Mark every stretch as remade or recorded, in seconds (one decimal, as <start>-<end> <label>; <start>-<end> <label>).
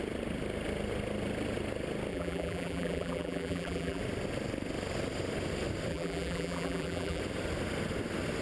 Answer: 0.0-2.1 recorded; 2.1-4.0 remade; 4.0-5.9 recorded; 5.9-7.2 remade; 7.2-8.4 recorded